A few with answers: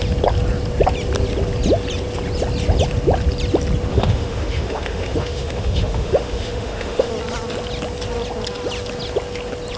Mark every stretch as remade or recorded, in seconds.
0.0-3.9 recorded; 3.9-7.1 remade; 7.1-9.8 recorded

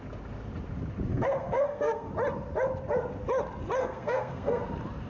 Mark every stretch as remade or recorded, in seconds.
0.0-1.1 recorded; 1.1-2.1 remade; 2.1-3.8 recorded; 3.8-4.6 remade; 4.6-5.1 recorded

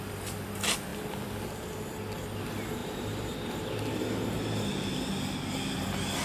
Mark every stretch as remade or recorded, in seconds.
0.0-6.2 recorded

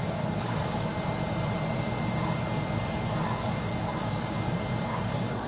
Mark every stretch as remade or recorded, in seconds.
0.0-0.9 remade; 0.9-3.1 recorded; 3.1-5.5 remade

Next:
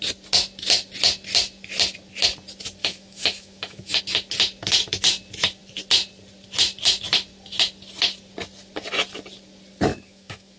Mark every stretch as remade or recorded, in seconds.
0.0-2.8 recorded; 2.8-4.0 remade; 4.0-9.9 recorded; 9.9-10.6 remade